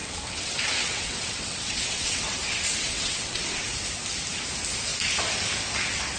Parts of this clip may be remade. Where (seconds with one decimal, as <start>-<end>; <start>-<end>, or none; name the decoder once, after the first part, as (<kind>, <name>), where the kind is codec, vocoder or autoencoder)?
0.0-3.7 (vocoder, WaveNeXt)